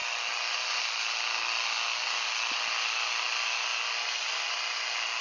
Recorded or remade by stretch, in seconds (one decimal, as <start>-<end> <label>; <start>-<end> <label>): 0.0-5.2 recorded

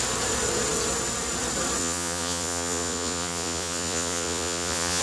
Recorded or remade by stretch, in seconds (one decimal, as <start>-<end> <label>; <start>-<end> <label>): 0.0-1.8 recorded; 1.8-5.0 remade